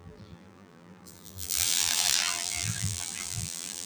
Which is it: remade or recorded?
remade